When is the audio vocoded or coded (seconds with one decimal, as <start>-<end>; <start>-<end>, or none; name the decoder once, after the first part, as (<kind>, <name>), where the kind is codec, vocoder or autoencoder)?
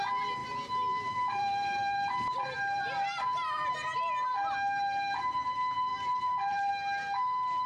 0.4-3.7 (vocoder, BigVGAN v2); 5.9-6.7